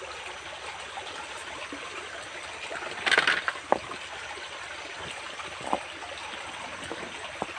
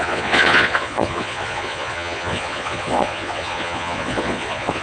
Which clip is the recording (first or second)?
first